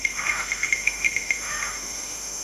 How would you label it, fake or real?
fake